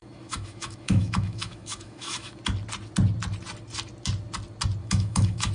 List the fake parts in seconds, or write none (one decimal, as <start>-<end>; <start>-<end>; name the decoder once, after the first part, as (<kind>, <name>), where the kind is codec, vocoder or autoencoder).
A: 0.0-2.4 (autoencoder, DAC-VAE); 4.8-5.5